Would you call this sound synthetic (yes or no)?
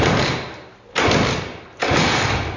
no